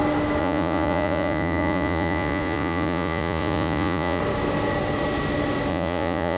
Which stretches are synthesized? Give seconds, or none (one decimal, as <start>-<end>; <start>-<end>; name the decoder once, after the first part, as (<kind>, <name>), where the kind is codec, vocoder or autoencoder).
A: 0.4-4.2 (vocoder, Vocos); 5.7-6.4